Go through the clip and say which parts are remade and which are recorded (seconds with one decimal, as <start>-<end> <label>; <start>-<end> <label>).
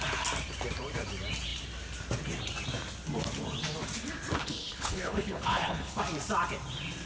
0.0-4.4 recorded; 4.4-6.0 remade; 6.0-7.1 recorded